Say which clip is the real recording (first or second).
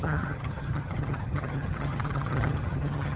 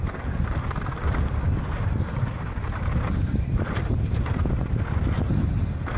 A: second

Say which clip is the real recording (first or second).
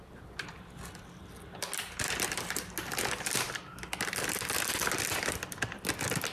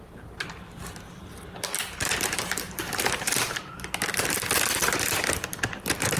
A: first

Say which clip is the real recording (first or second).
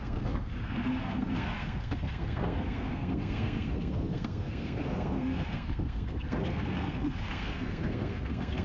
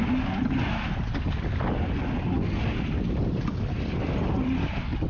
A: second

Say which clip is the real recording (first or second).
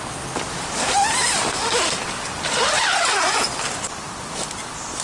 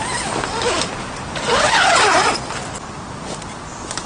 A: second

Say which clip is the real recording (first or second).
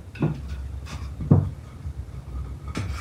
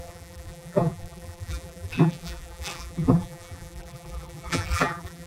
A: first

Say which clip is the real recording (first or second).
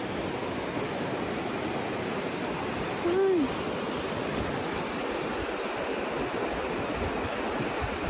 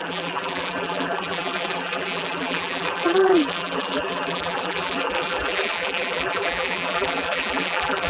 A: first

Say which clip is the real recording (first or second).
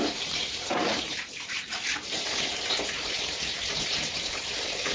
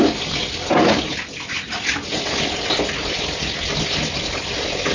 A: second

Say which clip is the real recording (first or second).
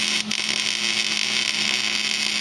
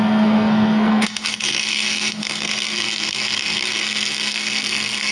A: first